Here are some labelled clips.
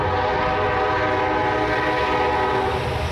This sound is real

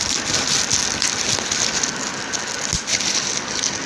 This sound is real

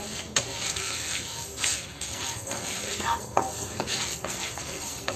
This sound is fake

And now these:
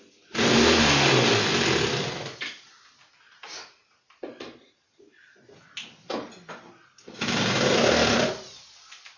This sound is real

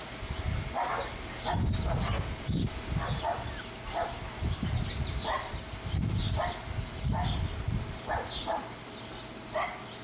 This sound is real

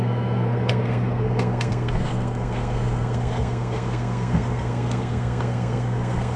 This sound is fake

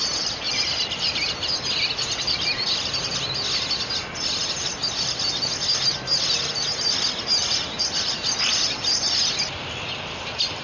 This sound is real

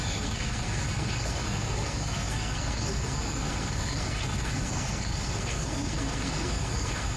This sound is fake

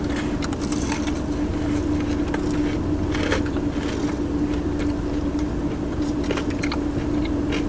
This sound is real